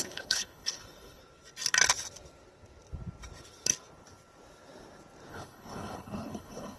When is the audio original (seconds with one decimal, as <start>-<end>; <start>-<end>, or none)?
1.2-5.3